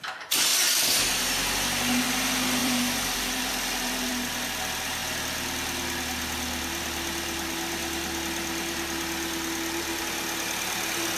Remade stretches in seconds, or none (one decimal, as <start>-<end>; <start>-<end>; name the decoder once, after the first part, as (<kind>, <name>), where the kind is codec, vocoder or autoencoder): 0.5-1.0 (vocoder, BigVGAN v2); 2.6-4.1